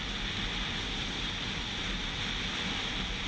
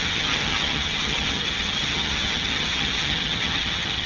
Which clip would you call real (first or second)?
first